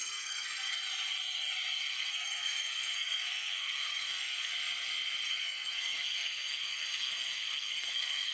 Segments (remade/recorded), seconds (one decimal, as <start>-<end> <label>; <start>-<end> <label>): 0.0-0.8 remade; 0.8-1.9 recorded; 1.9-4.5 remade; 4.5-5.3 recorded; 5.3-8.3 remade